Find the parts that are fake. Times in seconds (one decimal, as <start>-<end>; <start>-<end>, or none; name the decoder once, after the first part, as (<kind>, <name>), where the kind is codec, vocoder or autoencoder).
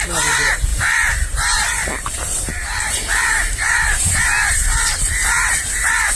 0.0-6.2 (vocoder, BigVGAN v2)